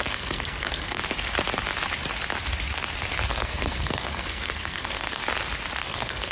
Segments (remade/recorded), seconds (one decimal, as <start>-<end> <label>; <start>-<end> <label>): 0.0-1.0 remade; 1.0-3.3 recorded; 3.3-5.2 remade; 5.2-5.8 recorded; 5.8-6.3 remade